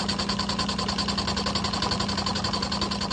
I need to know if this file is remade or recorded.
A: recorded